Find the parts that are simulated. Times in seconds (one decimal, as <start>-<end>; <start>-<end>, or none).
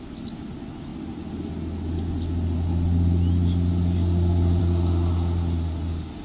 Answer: none